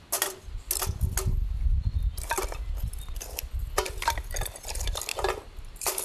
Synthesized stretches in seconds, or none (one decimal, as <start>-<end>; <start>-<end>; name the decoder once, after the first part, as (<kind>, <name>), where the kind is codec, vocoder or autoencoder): none